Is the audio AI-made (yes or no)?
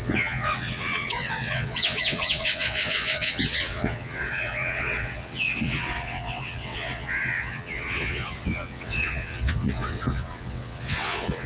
yes